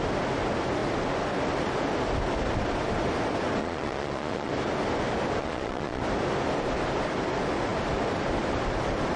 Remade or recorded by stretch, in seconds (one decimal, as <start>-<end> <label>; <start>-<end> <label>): 0.0-3.6 recorded; 3.6-4.5 remade; 4.5-5.4 recorded; 5.4-6.0 remade; 6.0-9.2 recorded